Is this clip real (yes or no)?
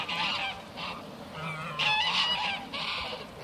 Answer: no